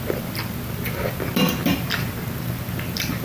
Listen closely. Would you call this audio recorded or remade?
recorded